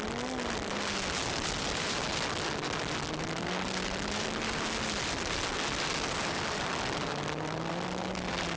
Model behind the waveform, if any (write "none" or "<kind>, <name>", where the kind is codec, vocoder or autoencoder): none